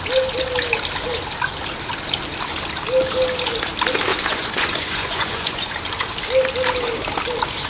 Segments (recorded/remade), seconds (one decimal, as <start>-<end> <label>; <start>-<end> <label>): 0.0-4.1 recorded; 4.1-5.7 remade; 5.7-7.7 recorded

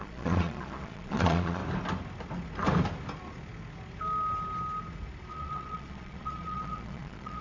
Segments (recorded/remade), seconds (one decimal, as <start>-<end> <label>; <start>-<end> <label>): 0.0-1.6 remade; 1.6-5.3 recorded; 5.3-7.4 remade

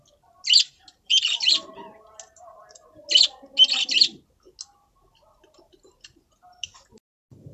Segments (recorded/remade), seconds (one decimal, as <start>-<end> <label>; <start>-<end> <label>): 0.0-7.5 recorded

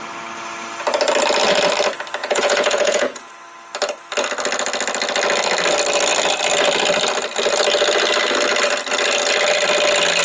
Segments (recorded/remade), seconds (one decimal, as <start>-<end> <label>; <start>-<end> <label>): 0.0-2.2 recorded; 2.2-3.3 remade; 3.3-10.2 recorded

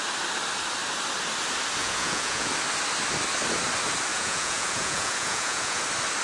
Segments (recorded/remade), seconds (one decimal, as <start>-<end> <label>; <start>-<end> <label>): 0.0-1.8 recorded; 1.8-2.5 remade; 2.5-4.1 recorded; 4.1-5.8 remade; 5.8-6.2 recorded

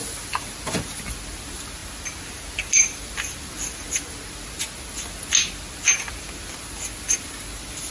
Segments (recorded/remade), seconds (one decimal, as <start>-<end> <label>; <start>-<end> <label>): 0.0-7.9 recorded

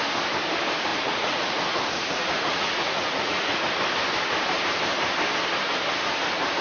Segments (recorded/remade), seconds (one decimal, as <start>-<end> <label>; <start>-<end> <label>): 0.0-0.9 recorded; 0.9-3.6 remade; 3.6-6.6 recorded